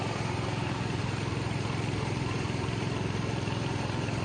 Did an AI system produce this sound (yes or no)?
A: yes